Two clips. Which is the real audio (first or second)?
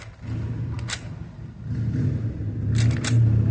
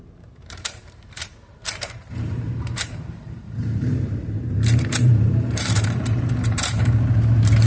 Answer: first